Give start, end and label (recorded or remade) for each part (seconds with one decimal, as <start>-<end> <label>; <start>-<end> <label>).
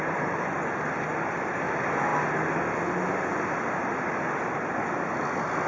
0.0-5.7 recorded